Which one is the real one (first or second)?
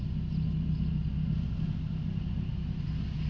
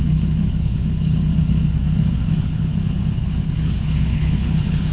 first